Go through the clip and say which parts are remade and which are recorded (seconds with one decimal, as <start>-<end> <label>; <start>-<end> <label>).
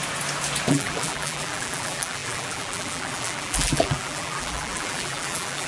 0.0-0.7 recorded; 0.7-5.7 remade